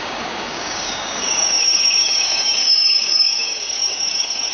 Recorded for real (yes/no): no